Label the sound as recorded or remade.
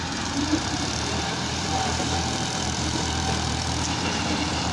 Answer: remade